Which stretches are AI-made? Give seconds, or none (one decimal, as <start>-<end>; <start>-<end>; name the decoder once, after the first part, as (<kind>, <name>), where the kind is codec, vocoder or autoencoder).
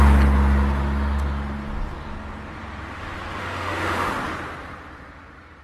3.4-4.1 (autoencoder, DAC-VAE)